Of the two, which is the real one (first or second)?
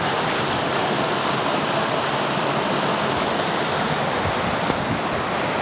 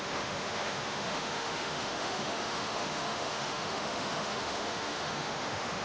first